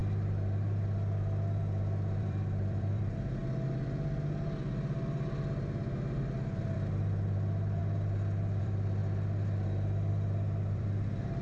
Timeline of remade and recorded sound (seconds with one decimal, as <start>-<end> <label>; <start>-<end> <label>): 0.0-2.2 recorded; 2.2-3.4 remade; 3.4-6.6 recorded; 6.6-7.8 remade; 7.8-8.6 recorded; 8.6-9.0 remade; 9.0-10.1 recorded; 10.1-11.4 remade